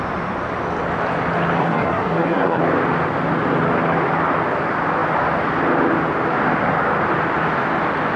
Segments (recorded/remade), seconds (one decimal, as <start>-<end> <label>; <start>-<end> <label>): 0.0-1.6 recorded; 1.6-2.6 remade; 2.6-8.2 recorded